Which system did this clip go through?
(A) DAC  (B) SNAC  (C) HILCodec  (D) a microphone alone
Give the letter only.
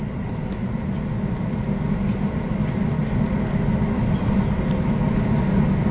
D